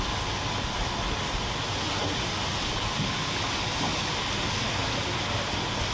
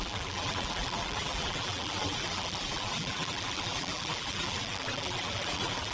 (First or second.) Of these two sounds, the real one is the first